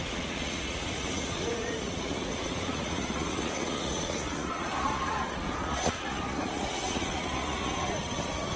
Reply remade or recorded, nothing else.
remade